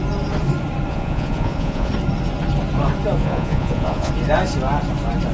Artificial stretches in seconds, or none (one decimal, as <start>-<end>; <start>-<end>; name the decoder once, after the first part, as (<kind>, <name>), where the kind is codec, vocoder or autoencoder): 0.9-1.9 (vocoder, Vocos); 3.2-4.1